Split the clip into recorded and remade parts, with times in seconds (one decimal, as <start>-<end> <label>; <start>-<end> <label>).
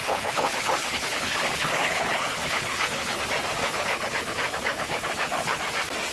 0.0-3.2 remade; 3.2-3.6 recorded; 3.6-5.6 remade; 5.6-6.1 recorded